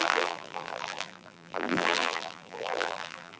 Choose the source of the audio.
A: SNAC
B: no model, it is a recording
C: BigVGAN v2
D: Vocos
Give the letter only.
C